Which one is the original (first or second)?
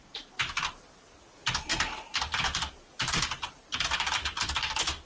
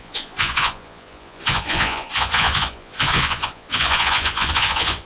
first